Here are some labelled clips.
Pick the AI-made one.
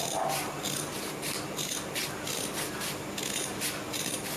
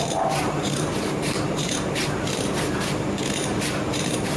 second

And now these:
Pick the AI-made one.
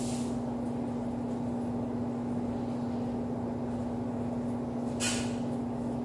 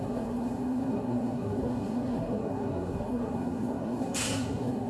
second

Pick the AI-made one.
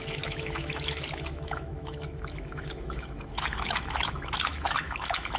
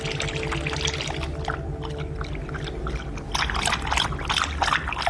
first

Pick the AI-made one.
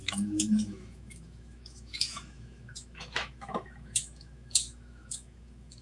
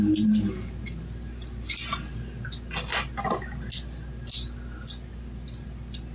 first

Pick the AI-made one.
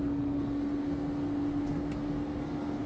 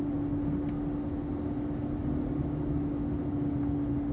first